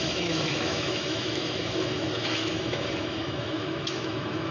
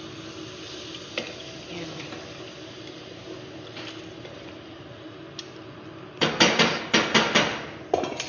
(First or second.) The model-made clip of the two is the first